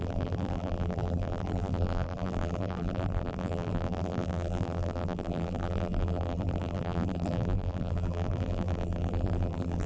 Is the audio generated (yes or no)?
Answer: yes